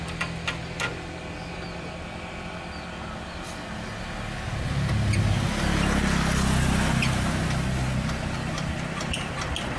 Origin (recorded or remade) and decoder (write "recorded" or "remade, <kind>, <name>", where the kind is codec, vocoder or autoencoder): recorded